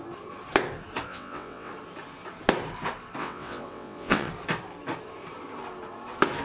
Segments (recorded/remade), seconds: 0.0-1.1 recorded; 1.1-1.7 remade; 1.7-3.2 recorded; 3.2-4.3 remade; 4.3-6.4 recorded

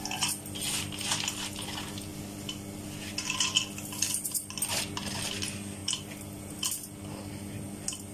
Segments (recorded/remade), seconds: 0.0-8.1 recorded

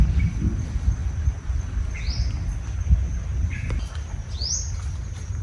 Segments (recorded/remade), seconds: 0.0-5.4 recorded